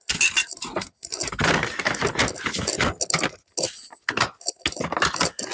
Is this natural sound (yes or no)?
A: yes